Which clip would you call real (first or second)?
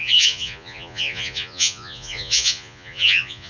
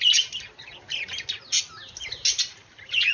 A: second